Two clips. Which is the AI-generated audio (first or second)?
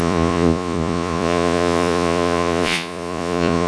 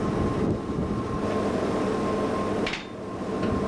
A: first